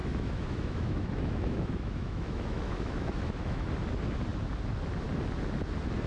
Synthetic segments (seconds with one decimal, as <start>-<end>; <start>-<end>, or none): 0.0-3.7